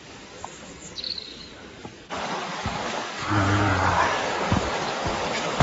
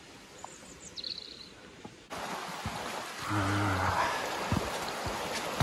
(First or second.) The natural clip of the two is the second